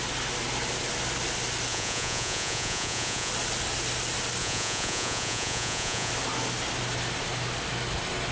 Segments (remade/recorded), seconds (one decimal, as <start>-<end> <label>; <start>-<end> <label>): 0.0-1.7 recorded; 1.7-3.3 remade; 3.3-4.4 recorded; 4.4-6.1 remade; 6.1-8.3 recorded